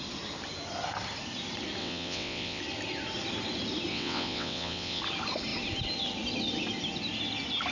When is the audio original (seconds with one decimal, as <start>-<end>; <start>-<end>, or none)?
0.0-1.8; 2.6-3.9; 5.0-7.7